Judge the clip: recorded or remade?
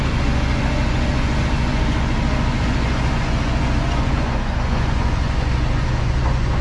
remade